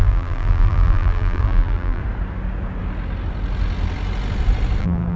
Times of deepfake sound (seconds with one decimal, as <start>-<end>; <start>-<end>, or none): 0.0-2.0; 4.8-5.2